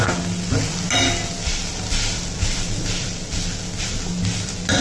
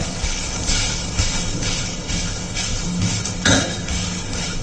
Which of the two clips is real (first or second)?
first